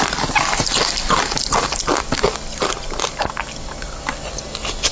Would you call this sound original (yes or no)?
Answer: yes